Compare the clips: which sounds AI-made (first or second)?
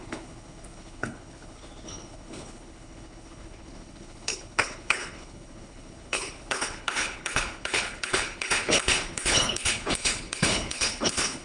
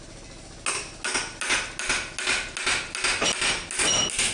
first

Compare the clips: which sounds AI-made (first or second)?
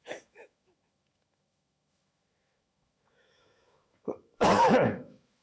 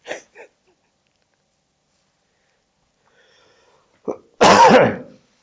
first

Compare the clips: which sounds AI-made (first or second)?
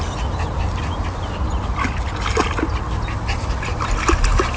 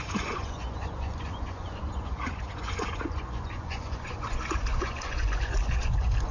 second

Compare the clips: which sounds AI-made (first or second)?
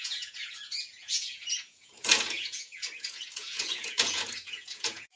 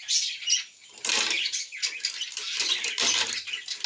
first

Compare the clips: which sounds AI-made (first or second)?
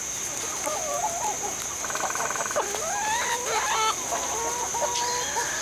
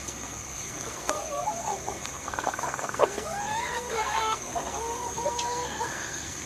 second